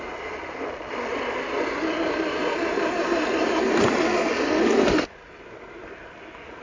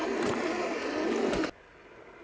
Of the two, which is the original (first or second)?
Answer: second